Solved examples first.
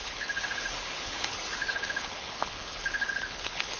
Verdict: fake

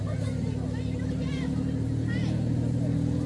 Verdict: real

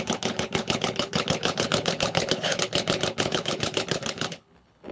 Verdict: fake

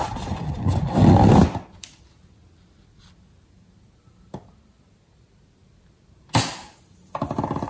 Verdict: real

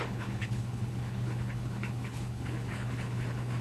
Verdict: fake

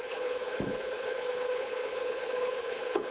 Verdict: fake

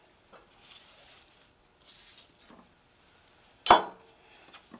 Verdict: real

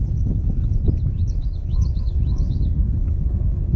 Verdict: fake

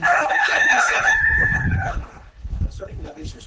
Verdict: fake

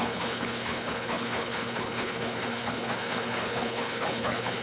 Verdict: fake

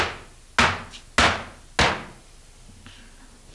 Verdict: real